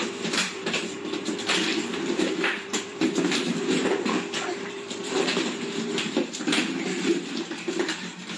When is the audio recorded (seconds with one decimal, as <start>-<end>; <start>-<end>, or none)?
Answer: 3.5-4.5; 6.5-7.3